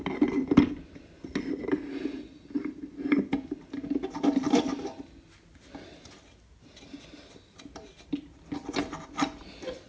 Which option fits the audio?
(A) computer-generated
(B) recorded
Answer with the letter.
B